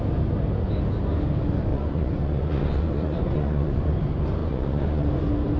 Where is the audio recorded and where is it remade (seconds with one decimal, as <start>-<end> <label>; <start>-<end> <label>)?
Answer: 0.0-1.7 recorded; 1.7-3.9 remade; 3.9-4.4 recorded; 4.4-5.1 remade; 5.1-5.6 recorded